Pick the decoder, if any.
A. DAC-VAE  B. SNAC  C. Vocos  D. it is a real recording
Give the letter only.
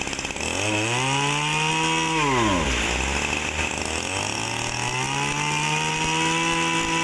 D